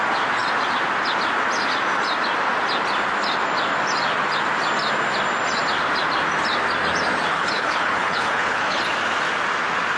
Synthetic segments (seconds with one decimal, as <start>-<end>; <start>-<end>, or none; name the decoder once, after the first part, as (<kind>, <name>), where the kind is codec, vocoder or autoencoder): 7.3-8.8 (codec, HILCodec)